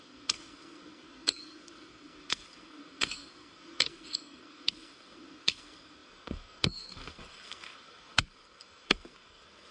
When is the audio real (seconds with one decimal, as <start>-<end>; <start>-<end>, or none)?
none